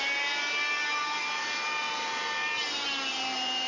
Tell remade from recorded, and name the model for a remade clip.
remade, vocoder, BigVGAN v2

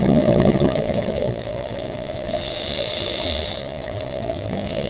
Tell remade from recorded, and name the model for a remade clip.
remade, vocoder, WaveNeXt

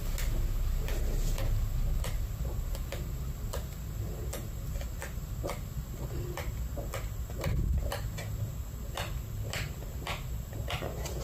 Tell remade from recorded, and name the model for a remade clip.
recorded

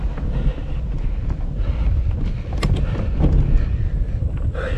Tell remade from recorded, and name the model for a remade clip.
recorded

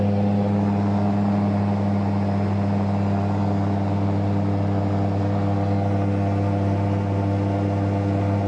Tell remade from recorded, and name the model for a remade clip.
recorded